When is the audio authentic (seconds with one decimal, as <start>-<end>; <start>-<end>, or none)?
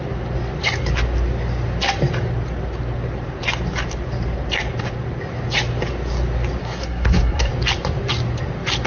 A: 0.0-6.6; 7.5-8.9